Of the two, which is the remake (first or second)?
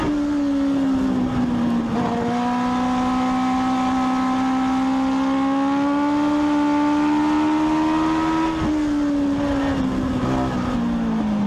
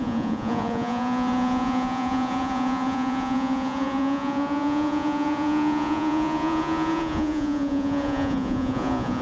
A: second